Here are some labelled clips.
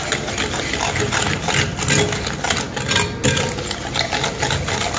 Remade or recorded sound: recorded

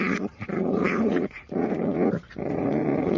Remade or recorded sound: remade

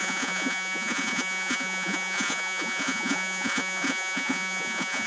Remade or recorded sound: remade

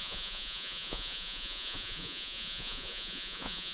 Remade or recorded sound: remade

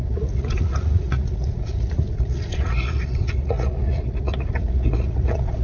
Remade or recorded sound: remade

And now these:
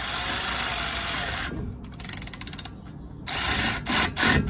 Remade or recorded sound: recorded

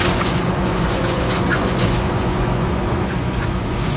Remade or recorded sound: remade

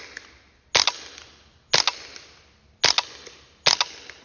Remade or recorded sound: recorded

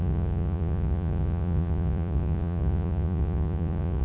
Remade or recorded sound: remade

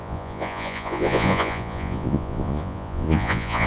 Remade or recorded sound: remade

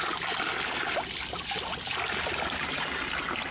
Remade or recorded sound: recorded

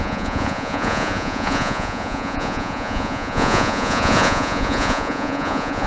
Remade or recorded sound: remade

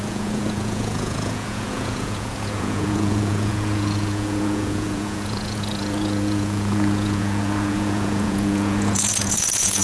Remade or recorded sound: remade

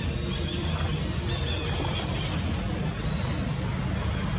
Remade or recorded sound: recorded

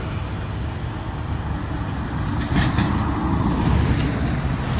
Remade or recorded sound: recorded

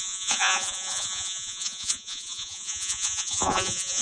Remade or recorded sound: remade